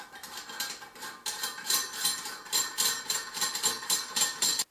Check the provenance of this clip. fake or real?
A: real